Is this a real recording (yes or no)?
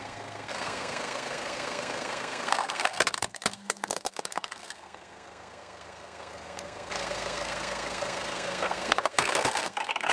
no